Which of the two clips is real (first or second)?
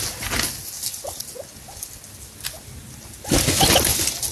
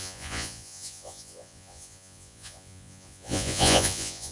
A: first